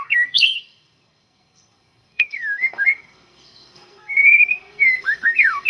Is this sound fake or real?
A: fake